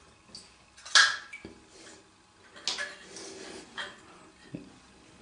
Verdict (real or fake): real